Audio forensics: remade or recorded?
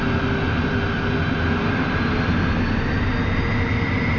recorded